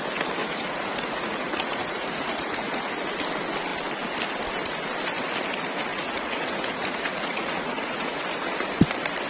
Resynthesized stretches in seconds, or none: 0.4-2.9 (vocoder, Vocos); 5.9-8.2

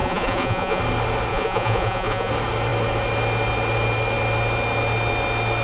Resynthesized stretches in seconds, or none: 0.0-0.8 (vocoder, Vocos); 1.3-2.3

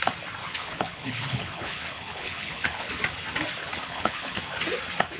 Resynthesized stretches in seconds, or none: 0.4-2.9 (codec, HILCodec); 3.6-4.4

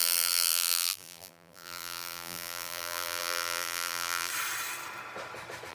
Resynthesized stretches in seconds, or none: 0.0-4.3 (vocoder, BigVGAN v2)

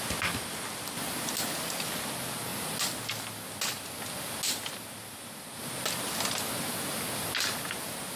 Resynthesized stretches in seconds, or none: none